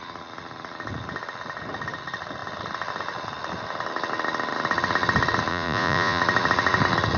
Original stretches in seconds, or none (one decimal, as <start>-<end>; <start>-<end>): 0.0-5.5; 6.2-7.2